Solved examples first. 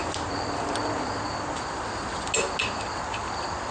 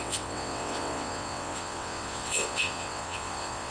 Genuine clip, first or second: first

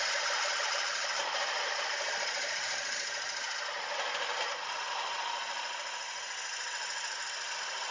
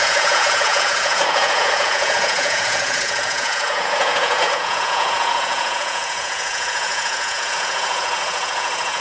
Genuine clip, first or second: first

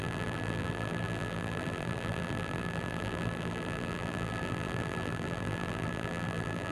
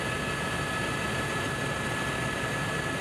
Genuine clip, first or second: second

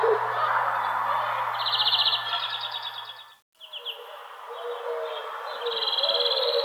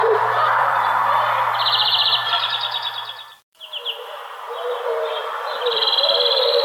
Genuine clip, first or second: first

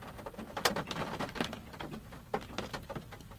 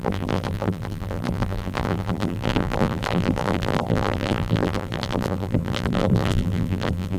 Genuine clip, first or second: first